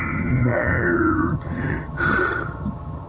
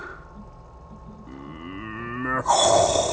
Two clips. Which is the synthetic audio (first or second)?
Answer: first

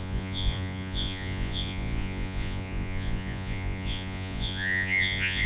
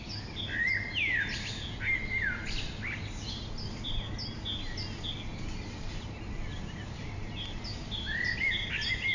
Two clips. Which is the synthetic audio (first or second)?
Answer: first